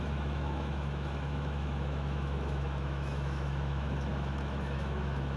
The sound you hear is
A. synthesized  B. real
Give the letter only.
A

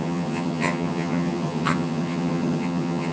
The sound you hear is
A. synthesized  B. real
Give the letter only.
A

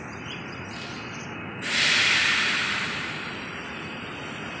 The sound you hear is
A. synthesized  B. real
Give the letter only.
B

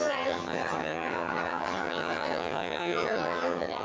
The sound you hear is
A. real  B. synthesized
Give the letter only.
B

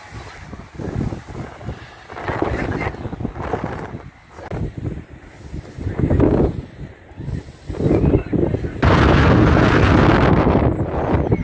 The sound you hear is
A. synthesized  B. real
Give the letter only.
B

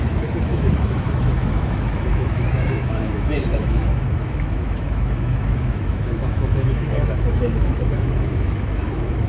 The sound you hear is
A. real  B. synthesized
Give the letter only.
B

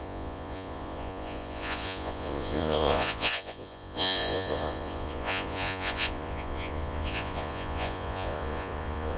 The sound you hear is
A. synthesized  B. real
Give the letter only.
A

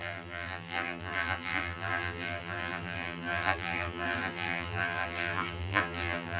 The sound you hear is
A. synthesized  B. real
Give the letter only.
A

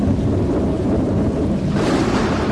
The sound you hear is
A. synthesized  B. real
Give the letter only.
B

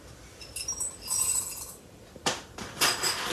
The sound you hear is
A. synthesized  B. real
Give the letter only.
A